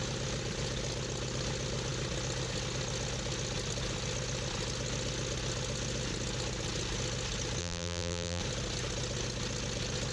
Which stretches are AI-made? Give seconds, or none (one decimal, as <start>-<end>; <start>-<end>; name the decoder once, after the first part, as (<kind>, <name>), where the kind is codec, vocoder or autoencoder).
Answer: 7.6-8.4 (vocoder, BigVGAN v2)